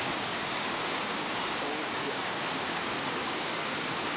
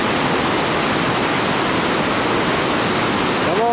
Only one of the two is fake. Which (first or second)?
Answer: first